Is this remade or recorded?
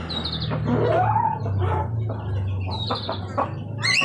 recorded